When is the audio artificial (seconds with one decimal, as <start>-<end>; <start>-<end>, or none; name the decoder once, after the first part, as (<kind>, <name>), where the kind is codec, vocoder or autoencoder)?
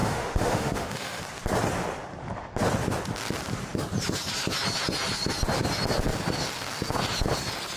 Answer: 0.0-1.2 (autoencoder, DAC-VAE)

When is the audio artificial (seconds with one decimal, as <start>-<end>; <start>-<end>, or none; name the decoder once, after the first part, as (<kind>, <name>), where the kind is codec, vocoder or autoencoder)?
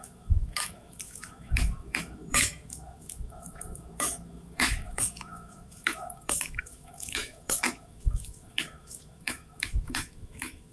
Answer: 0.0-10.7 (autoencoder, DAC-VAE)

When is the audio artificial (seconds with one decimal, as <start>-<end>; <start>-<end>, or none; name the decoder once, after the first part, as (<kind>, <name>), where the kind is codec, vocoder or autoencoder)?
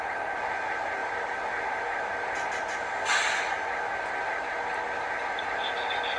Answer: none